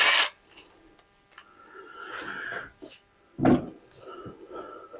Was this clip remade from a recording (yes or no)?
no